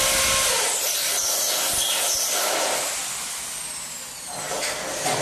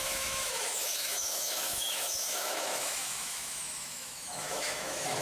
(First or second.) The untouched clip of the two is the first